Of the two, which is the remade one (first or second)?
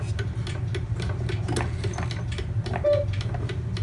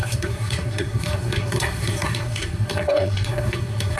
second